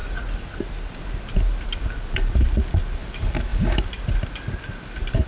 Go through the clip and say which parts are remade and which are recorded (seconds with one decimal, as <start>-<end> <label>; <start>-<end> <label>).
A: 0.0-5.3 recorded